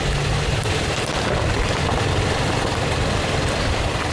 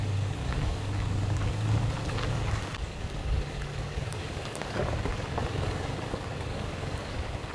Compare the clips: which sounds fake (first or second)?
second